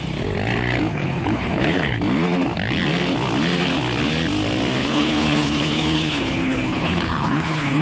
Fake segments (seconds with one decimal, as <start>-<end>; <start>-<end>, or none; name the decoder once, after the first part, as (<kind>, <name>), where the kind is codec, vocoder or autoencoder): 0.9-2.0 (codec, HILCodec); 4.8-7.8